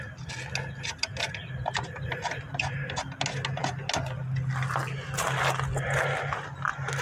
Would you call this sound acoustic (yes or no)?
yes